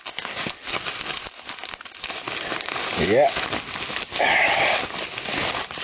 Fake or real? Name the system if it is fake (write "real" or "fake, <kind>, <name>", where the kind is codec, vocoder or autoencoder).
real